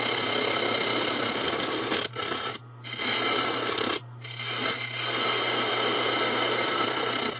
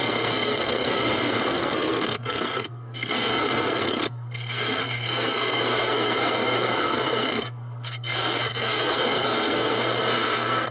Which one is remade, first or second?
second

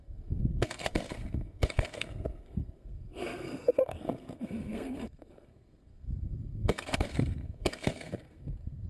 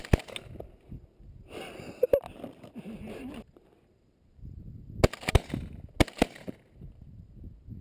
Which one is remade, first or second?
first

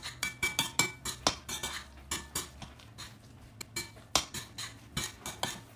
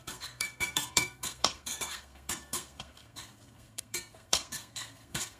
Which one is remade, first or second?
second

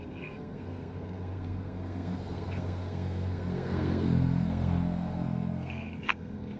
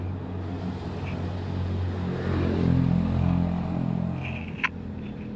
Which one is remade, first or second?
first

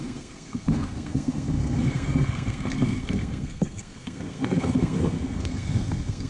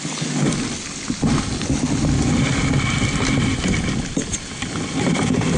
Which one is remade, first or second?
first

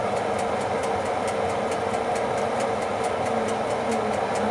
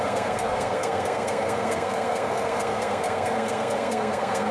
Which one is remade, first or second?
second